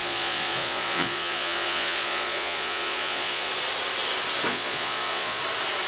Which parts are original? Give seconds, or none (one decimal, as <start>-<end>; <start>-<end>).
3.5-4.5; 5.4-5.9